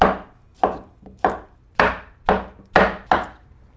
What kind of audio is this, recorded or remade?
recorded